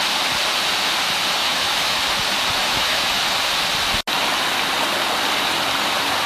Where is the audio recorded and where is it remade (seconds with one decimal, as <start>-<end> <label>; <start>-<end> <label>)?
0.0-1.4 recorded; 1.4-2.0 remade; 2.0-2.7 recorded; 2.7-3.2 remade; 3.2-6.3 recorded